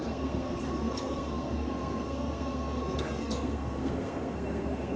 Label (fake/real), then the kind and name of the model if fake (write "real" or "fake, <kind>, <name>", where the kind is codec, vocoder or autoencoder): fake, codec, SNAC